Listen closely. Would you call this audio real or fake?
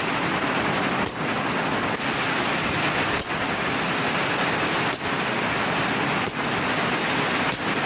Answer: real